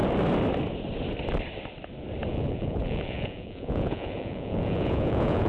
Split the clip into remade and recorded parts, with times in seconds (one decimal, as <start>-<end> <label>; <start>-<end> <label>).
0.0-2.3 recorded; 2.3-5.5 remade

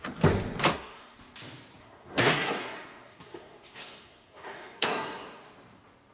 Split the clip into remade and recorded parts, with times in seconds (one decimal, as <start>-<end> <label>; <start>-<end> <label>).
0.0-0.7 recorded; 0.7-1.2 remade; 1.2-1.8 recorded; 1.8-5.5 remade; 5.5-6.1 recorded

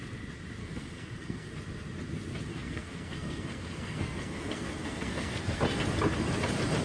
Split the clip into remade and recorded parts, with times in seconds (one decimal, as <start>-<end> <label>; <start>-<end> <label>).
0.0-0.6 recorded; 0.6-1.5 remade; 1.5-2.5 recorded; 2.5-5.6 remade; 5.6-6.8 recorded

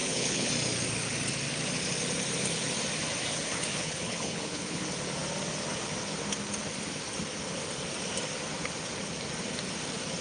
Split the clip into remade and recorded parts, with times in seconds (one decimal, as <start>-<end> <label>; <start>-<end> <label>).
0.0-0.5 remade; 0.5-3.3 recorded; 3.3-4.8 remade; 4.8-10.2 recorded